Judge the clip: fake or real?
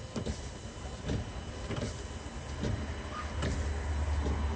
real